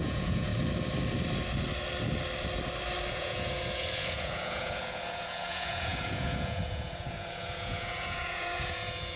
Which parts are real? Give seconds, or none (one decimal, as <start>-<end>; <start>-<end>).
0.5-3.1